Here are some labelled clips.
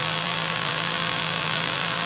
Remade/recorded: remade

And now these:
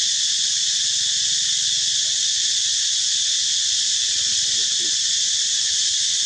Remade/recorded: recorded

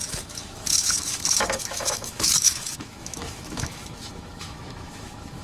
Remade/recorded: remade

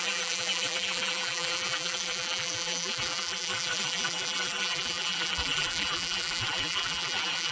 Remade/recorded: remade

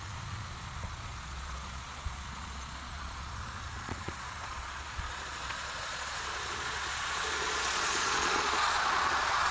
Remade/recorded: remade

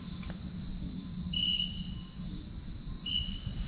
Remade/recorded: recorded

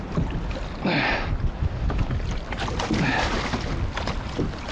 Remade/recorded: recorded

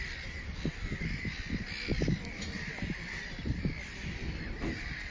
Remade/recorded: recorded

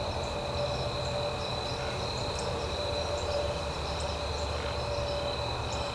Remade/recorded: recorded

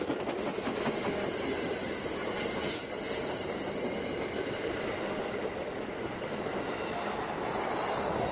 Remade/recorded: recorded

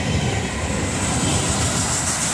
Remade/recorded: recorded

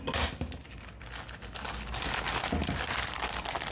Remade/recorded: recorded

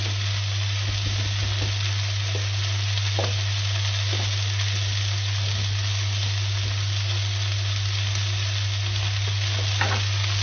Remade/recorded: recorded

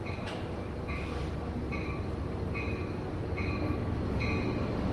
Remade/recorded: recorded